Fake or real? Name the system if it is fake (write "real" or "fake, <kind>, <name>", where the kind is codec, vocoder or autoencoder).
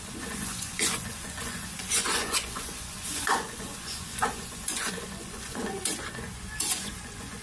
fake, vocoder, Vocos